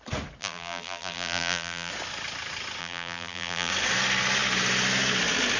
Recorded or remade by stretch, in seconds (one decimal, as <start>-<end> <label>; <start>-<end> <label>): 0.0-0.4 recorded; 0.4-1.9 remade; 1.9-2.8 recorded; 2.8-3.7 remade; 3.7-5.6 recorded